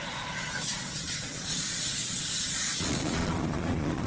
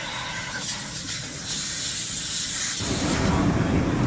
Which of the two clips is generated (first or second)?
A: first